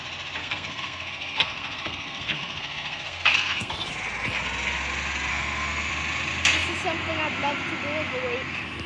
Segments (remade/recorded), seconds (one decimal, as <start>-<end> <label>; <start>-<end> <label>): 0.0-0.4 recorded; 0.4-3.7 remade; 3.7-5.3 recorded; 5.3-5.9 remade; 5.9-8.9 recorded